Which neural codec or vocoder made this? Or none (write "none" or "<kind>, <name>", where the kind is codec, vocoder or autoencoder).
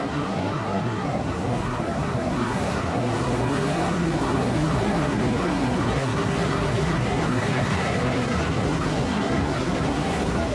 codec, SNAC